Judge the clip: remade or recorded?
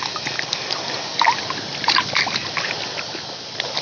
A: recorded